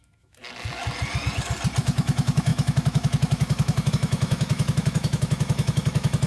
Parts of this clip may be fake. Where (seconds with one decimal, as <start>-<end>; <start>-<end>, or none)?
0.0-0.4; 1.8-6.3